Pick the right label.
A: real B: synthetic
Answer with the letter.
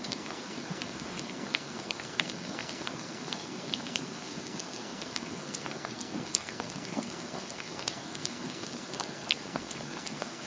B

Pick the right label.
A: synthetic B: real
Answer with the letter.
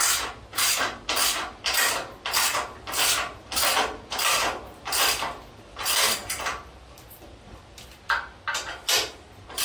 B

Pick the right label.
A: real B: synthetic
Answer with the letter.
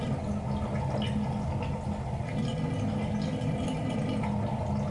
A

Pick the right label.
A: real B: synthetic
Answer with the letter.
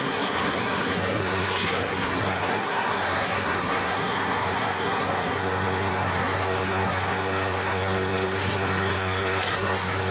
B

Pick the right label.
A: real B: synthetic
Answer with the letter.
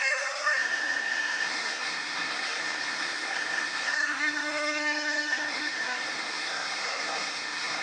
B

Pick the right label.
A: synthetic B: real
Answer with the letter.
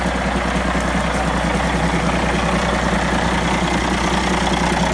B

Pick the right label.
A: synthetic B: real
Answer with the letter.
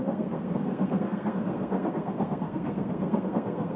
A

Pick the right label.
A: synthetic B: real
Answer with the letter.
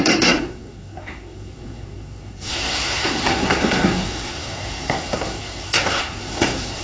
A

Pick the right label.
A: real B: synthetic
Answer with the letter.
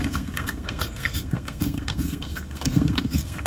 B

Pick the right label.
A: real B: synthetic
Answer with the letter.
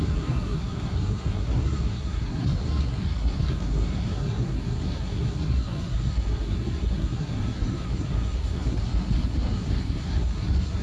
B